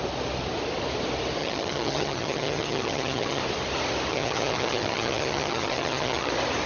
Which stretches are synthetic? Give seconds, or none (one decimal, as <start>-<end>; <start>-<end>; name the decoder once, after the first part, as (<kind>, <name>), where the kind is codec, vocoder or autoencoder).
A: 1.4-3.4 (vocoder, HiFi-GAN); 4.1-6.3